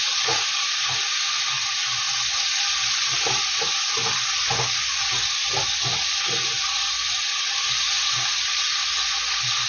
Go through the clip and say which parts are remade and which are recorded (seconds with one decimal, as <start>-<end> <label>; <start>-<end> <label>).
0.0-9.7 recorded